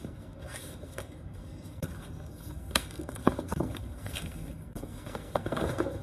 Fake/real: fake